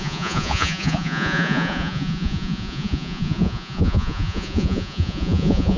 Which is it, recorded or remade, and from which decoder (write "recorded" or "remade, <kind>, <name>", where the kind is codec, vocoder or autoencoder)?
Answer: remade, vocoder, Vocos